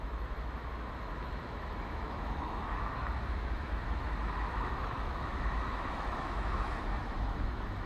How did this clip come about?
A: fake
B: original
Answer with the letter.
A